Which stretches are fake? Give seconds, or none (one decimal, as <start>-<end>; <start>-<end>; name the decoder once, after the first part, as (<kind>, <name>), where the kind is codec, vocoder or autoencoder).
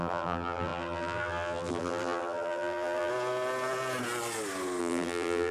0.0-3.1 (vocoder, BigVGAN v2); 4.8-5.5